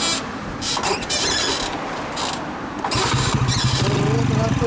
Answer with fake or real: real